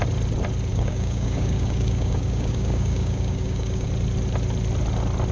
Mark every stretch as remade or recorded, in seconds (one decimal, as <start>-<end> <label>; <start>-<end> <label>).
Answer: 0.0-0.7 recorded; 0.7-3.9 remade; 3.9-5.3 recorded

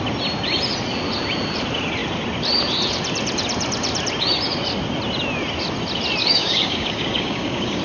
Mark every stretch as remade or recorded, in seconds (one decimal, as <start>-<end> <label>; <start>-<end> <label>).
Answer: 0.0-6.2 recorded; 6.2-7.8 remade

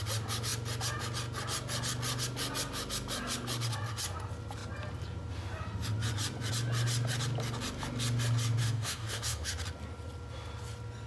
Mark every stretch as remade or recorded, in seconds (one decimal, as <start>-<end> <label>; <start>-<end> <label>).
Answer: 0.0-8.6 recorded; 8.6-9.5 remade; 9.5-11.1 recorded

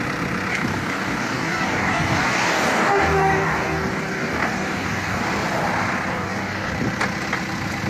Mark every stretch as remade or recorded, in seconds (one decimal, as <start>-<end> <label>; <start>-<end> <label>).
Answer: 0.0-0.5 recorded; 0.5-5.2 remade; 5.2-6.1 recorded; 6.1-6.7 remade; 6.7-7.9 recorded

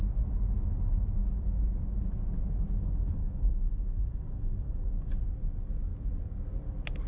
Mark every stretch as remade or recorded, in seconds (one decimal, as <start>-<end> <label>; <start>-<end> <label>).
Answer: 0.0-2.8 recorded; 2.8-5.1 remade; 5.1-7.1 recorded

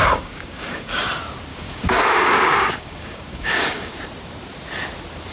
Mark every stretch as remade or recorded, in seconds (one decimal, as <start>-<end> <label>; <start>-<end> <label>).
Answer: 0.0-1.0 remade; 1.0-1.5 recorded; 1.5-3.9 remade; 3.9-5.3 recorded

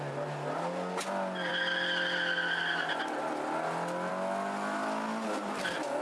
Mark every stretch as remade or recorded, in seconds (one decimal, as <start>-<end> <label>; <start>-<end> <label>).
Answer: 0.0-6.0 recorded

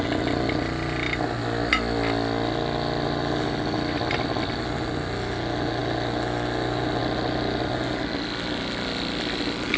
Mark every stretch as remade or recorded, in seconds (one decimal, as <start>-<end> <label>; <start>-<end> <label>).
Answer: 0.0-9.8 recorded